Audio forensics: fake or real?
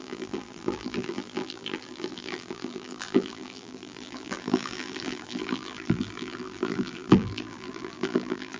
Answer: fake